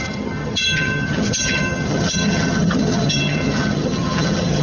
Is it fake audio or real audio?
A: fake